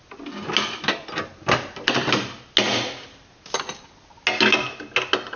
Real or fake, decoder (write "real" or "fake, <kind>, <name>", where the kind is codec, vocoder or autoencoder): real